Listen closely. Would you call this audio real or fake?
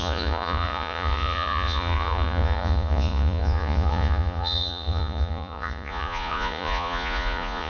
fake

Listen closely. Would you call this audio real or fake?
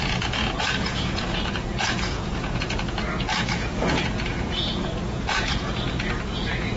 fake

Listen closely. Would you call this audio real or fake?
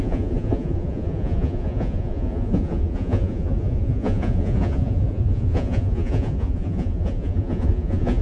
fake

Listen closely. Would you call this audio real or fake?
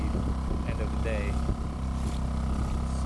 real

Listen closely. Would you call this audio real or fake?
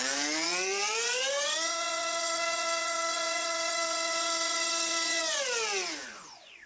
fake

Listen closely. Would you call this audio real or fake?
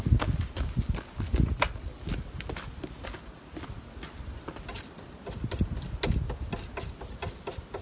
real